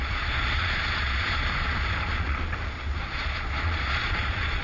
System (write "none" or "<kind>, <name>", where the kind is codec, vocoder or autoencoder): vocoder, Vocos